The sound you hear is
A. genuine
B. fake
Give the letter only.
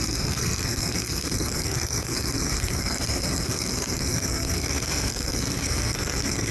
B